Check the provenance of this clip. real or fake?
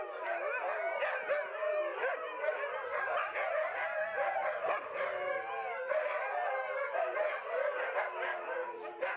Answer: real